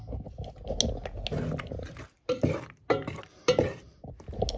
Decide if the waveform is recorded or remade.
recorded